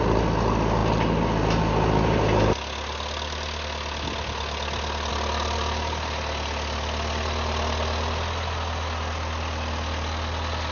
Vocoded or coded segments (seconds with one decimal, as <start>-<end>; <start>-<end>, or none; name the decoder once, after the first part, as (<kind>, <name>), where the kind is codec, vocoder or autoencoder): none